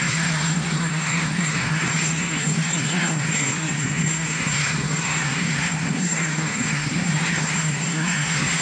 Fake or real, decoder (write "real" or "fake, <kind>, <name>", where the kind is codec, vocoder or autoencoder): fake, codec, SNAC